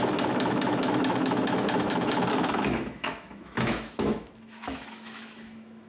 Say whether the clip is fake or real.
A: fake